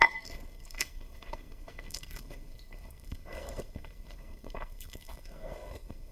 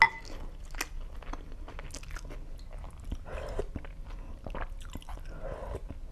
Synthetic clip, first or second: first